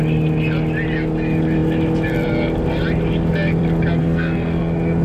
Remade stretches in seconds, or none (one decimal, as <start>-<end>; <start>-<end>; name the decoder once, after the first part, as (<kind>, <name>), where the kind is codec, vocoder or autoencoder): 4.0-4.6 (codec, SNAC)